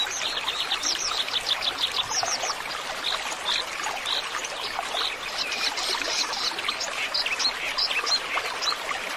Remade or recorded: recorded